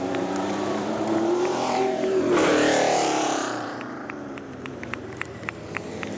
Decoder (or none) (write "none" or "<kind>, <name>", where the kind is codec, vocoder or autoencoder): vocoder, BigVGAN v2